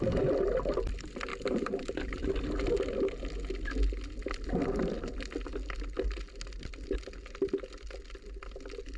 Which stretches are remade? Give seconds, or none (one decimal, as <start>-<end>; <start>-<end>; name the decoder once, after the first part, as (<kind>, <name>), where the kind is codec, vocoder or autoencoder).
1.3-2.3 (vocoder, BigVGAN v2)